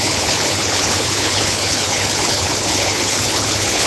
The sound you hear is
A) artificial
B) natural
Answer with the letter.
A